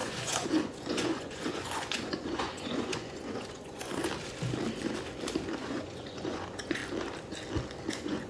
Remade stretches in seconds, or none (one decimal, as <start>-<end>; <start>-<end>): 0.0-4.0; 5.6-6.8; 7.9-8.3